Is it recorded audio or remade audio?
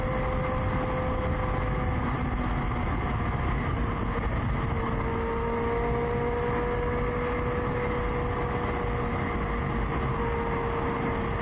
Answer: recorded